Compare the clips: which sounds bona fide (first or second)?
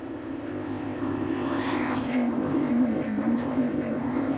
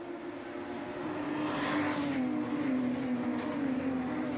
second